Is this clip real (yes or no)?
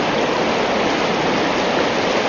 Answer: yes